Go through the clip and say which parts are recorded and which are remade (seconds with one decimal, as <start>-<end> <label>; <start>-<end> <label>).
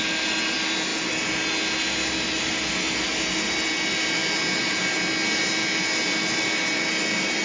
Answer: 0.0-7.4 recorded